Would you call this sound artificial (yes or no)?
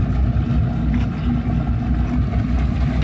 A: no